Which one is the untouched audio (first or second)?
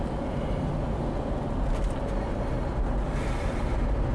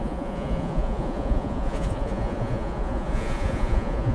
first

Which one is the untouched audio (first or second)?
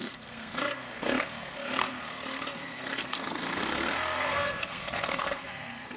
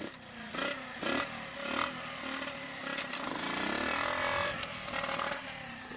second